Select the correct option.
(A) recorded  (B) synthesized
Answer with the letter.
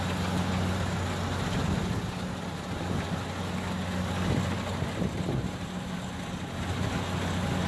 A